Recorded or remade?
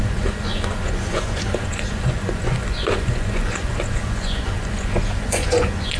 remade